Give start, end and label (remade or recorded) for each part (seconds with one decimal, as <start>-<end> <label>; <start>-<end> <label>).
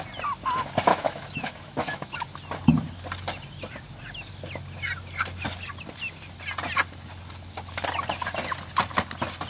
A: 0.0-0.9 recorded; 0.9-2.1 remade; 2.1-9.5 recorded